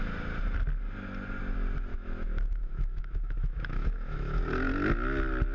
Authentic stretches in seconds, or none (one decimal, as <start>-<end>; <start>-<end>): 0.0-1.9; 4.4-5.5